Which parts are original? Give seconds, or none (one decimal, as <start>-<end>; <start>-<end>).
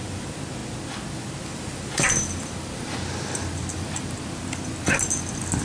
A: 0.0-5.6